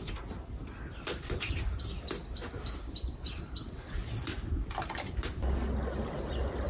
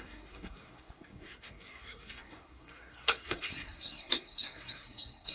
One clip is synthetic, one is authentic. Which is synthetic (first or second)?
second